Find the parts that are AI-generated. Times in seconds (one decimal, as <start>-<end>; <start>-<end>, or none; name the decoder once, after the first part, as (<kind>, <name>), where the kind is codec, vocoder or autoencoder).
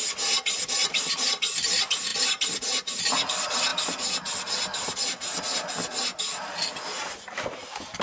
none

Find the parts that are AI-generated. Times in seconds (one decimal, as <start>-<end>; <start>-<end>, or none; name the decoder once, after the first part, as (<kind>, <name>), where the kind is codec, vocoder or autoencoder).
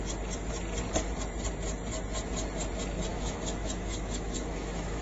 3.1-5.0 (autoencoder, DAC-VAE)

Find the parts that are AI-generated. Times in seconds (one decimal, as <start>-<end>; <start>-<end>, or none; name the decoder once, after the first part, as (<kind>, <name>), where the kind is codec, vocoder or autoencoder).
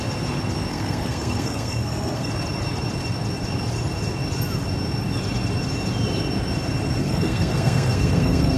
0.7-2.3 (codec, SNAC); 7.0-8.6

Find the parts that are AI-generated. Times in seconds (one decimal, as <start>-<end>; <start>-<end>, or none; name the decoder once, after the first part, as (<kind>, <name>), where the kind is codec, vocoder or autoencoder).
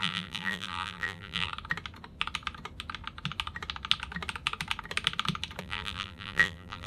0.0-1.5 (vocoder, BigVGAN v2); 5.6-6.9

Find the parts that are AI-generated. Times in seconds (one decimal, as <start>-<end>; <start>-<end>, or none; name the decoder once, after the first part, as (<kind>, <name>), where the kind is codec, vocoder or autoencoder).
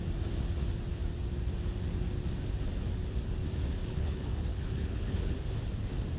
3.8-5.4 (codec, HILCodec)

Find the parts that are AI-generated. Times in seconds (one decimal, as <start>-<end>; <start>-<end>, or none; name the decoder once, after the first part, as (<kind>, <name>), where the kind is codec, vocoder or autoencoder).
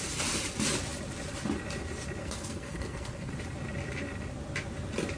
2.2-3.3 (codec, SNAC)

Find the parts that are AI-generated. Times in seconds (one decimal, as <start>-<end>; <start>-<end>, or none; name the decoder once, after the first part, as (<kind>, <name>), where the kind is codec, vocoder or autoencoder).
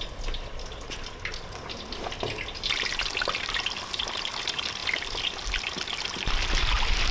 none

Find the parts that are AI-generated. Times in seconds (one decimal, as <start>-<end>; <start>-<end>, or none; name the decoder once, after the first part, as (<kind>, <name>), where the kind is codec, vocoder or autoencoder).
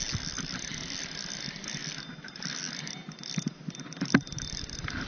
none